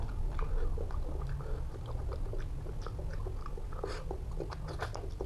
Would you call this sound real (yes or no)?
yes